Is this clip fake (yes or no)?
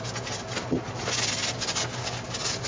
no